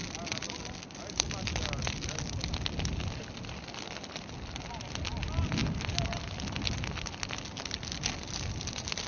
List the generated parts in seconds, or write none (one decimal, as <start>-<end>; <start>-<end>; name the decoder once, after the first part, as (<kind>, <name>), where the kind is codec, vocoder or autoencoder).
none